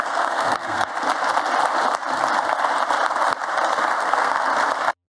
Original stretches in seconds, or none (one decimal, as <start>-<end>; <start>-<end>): 0.9-4.0; 4.5-5.1